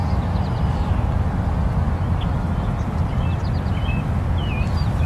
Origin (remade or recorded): recorded